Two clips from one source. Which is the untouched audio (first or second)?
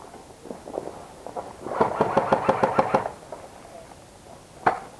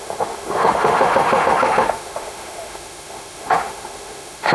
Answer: first